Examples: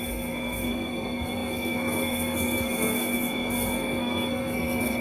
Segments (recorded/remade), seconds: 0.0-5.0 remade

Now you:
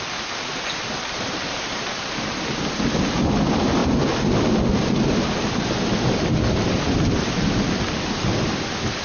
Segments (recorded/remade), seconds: 0.0-9.0 recorded

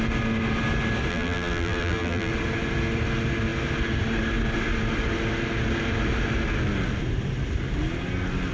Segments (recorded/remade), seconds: 0.0-1.1 recorded; 1.1-2.3 remade; 2.3-8.5 recorded

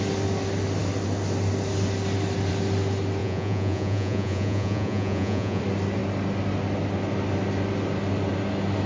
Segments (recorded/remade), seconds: 0.0-3.2 recorded; 3.2-5.6 remade; 5.6-8.9 recorded